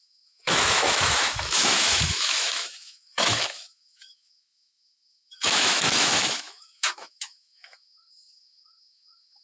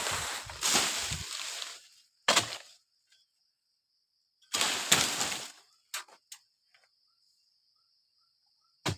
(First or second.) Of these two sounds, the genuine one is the second